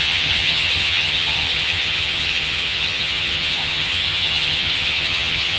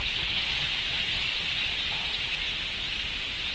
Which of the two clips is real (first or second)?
second